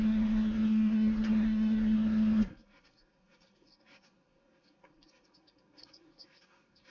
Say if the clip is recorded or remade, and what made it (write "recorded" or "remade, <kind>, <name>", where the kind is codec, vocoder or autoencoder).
remade, codec, SNAC